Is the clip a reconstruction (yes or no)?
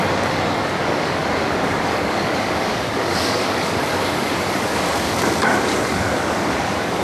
yes